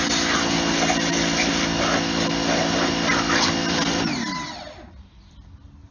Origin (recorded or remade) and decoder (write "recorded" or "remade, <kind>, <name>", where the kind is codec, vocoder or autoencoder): recorded